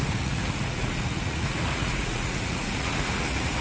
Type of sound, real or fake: fake